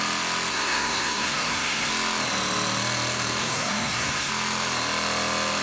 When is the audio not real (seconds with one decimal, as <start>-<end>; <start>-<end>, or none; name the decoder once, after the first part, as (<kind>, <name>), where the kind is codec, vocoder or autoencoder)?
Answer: 0.5-1.9 (codec, SNAC); 3.4-4.3